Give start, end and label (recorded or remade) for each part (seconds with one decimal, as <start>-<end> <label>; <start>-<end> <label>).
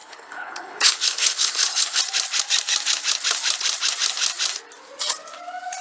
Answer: 0.0-2.0 remade; 2.0-5.8 recorded